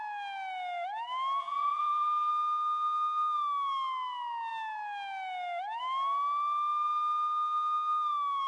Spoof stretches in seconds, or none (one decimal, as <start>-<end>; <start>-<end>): 1.4-2.3